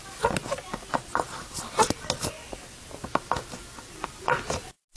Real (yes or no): yes